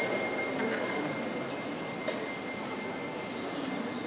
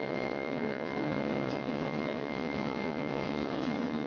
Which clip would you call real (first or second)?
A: first